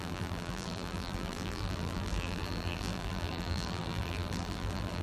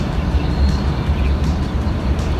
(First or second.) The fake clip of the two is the first